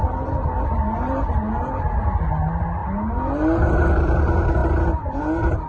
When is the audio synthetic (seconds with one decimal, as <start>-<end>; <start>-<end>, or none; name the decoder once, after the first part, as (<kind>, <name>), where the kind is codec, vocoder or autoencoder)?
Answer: none